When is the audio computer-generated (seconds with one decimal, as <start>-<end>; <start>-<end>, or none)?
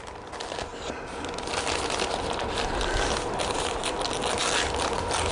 none